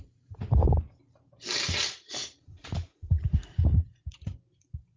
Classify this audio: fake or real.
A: real